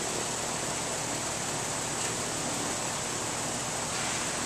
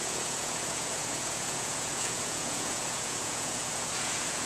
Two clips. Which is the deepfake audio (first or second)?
second